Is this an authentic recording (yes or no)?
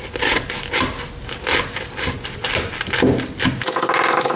yes